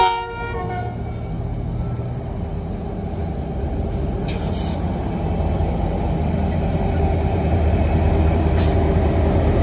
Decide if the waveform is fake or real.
real